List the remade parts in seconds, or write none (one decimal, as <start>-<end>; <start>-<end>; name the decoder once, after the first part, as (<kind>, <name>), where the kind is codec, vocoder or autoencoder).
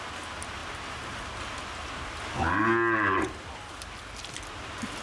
none